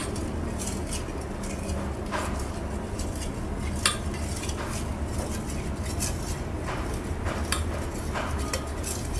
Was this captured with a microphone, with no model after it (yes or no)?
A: yes